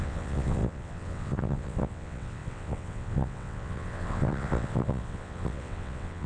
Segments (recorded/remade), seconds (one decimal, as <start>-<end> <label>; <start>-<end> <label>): 0.0-6.3 remade